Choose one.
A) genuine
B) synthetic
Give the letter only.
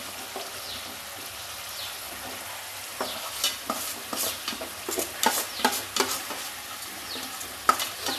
A